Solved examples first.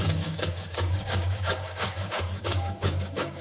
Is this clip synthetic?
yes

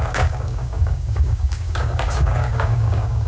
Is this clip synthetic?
yes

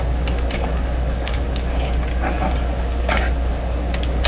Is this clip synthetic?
yes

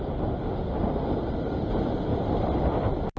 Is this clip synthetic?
no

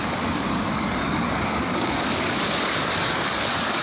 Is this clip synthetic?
yes